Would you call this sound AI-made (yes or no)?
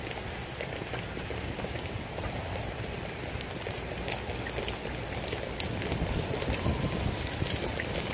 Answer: no